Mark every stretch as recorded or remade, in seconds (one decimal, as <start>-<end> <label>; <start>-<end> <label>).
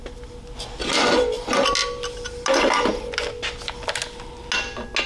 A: 0.0-5.1 recorded